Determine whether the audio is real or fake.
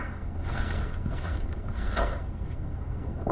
fake